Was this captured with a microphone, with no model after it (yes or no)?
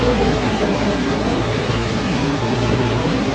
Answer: no